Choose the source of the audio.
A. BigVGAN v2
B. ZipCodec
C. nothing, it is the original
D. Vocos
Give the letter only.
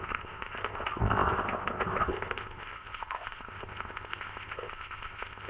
B